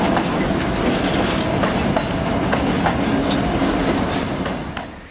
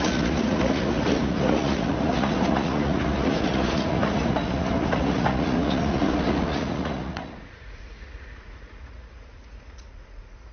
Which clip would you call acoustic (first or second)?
first